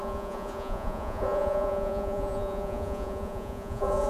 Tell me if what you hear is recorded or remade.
remade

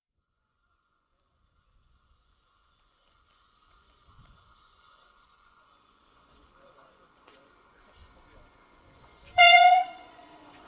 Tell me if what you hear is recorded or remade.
remade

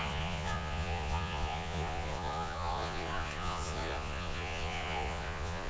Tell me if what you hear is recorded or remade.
remade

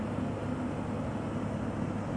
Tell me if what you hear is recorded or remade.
recorded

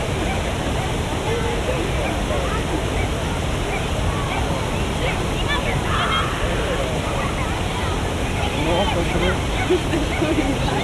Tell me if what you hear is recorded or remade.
recorded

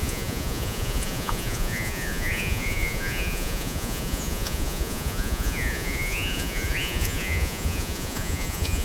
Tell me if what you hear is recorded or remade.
remade